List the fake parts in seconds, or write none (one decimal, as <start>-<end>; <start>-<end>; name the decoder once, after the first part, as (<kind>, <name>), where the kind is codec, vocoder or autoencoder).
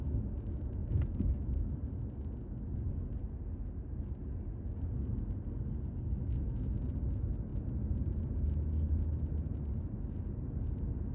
none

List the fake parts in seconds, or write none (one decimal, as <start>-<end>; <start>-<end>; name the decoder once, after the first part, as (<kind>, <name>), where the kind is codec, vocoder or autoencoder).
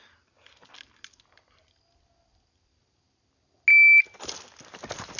none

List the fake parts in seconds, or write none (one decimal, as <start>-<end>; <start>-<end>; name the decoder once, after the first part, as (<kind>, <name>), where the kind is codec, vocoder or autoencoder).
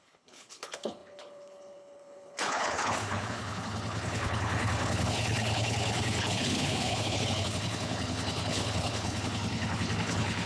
0.0-10.5 (codec, HILCodec)